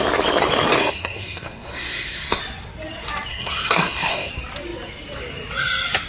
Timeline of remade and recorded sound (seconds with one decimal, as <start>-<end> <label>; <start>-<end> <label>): 0.0-0.8 recorded; 0.8-2.4 remade; 2.4-3.3 recorded; 3.3-4.3 remade; 4.3-6.1 recorded